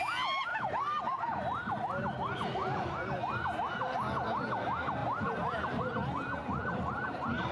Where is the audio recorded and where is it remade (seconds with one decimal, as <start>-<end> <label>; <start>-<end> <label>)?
0.0-5.0 recorded; 5.0-5.8 remade; 5.8-6.4 recorded; 6.4-7.5 remade